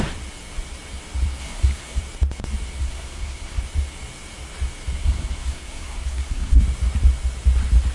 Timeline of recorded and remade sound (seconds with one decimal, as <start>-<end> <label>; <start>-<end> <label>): 0.0-1.4 recorded; 1.4-2.0 remade; 2.0-2.8 recorded; 2.8-3.6 remade; 3.6-5.0 recorded; 5.0-6.6 remade; 6.6-7.9 recorded